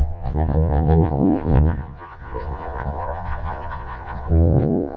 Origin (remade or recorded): remade